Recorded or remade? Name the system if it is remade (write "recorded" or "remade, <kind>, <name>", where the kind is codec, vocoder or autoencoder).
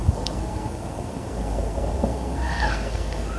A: remade, codec, SNAC